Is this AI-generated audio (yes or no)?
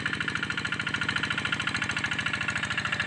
no